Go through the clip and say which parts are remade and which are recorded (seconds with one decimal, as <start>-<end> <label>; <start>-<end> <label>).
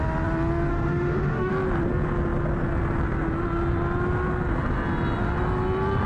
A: 0.0-0.7 recorded; 0.7-1.5 remade; 1.5-6.1 recorded